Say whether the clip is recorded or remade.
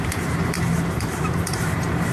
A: remade